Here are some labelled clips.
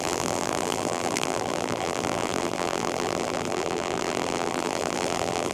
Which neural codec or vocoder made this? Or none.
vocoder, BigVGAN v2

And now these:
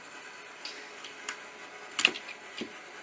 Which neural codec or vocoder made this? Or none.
none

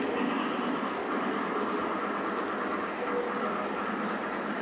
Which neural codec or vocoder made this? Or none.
none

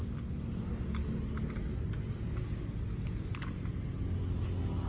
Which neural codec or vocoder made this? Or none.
none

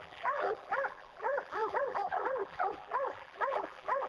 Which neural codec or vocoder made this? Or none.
vocoder, BigVGAN v2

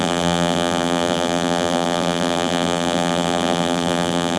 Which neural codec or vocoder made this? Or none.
vocoder, BigVGAN v2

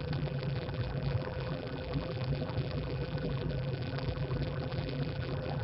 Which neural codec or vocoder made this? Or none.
vocoder, BigVGAN v2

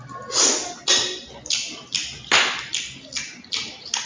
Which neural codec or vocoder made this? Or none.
none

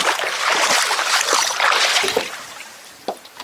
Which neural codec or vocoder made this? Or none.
vocoder, BigVGAN v2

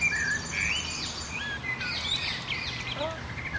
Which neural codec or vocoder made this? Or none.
none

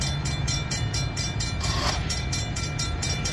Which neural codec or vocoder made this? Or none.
vocoder, BigVGAN v2